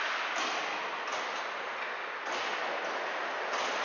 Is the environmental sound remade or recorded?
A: recorded